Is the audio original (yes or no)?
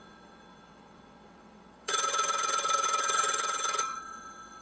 no